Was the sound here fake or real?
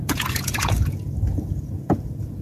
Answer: fake